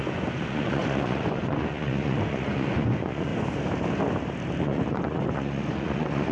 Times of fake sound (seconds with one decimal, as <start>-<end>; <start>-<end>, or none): 0.0-3.3; 4.6-6.3